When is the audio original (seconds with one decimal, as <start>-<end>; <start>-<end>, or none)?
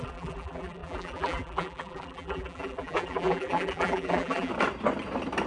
4.5-5.5